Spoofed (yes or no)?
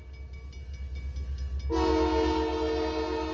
no